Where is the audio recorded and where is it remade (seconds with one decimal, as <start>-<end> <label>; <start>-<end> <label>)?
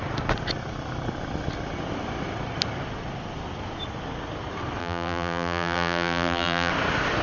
0.0-4.8 recorded; 4.8-6.7 remade; 6.7-7.2 recorded